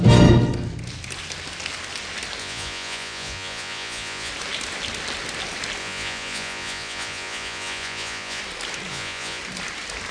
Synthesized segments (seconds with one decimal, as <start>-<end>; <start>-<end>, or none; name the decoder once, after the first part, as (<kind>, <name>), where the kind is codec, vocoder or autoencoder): 2.4-4.3 (vocoder, Vocos); 5.8-8.4; 8.9-9.4